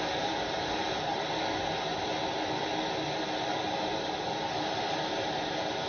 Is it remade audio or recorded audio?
recorded